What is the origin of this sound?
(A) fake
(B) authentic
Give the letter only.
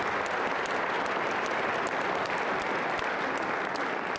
B